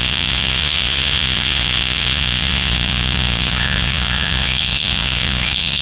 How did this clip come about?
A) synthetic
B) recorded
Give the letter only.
A